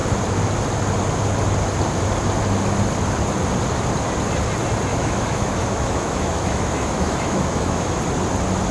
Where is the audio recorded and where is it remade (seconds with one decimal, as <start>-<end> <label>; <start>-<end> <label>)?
0.0-4.9 recorded; 4.9-8.0 remade; 8.0-8.7 recorded